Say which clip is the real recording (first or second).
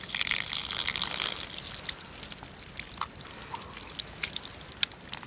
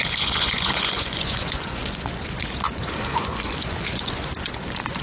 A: first